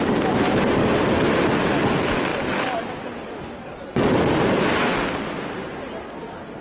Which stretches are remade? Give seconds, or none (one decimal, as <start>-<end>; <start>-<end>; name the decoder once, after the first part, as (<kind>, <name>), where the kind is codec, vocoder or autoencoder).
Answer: 2.3-3.3 (vocoder, BigVGAN v2)